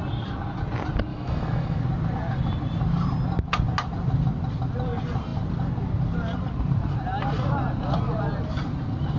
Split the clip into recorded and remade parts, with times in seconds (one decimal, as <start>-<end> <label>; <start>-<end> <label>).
0.0-1.1 recorded; 1.1-1.8 remade; 1.8-9.2 recorded